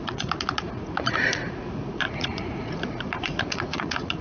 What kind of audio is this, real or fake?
fake